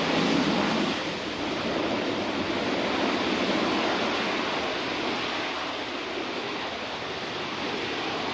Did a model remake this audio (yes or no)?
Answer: no